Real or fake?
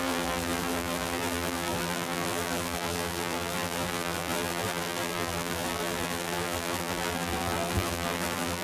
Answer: fake